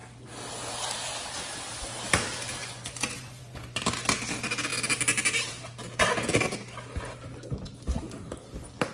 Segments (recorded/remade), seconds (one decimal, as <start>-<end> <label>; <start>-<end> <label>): 0.0-2.6 recorded; 2.6-3.8 remade; 3.8-8.9 recorded